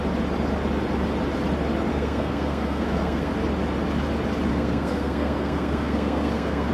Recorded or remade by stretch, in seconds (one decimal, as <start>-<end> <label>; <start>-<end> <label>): 0.0-1.9 recorded; 1.9-3.3 remade; 3.3-4.5 recorded; 4.5-6.7 remade